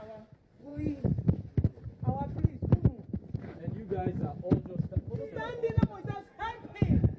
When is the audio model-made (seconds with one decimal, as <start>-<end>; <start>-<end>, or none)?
none